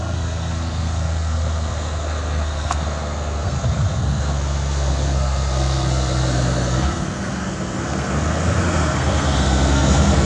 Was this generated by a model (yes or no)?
yes